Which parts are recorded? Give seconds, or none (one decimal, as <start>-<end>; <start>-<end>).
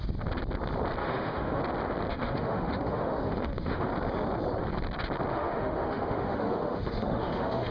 0.0-1.0; 1.6-2.1; 3.9-5.3